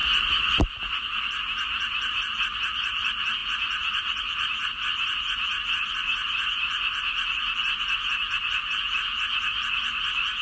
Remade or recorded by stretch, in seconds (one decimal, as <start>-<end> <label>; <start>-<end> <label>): 0.0-0.6 remade; 0.6-10.4 recorded